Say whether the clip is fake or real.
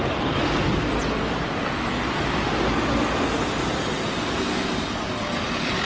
real